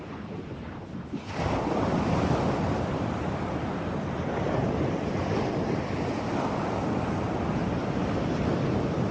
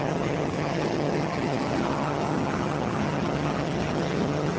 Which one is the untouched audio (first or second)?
first